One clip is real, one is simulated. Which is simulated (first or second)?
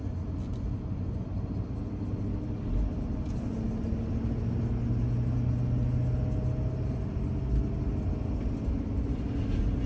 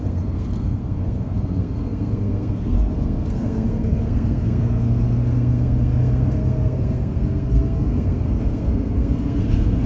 second